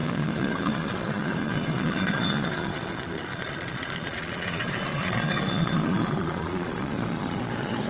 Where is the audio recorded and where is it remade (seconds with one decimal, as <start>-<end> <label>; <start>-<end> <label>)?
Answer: 0.0-7.9 remade